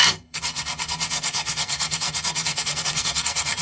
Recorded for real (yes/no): no